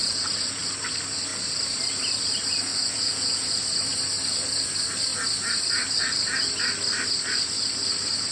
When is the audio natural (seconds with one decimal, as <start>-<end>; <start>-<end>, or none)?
0.6-2.7; 3.6-8.3